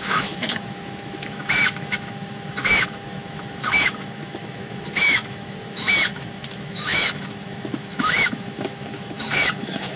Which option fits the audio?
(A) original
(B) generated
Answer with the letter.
B